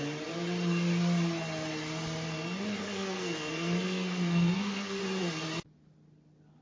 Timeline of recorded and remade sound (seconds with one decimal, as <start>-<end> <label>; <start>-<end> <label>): 0.0-2.8 recorded; 2.8-5.0 remade; 5.0-6.6 recorded